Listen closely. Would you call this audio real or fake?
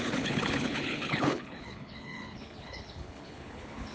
fake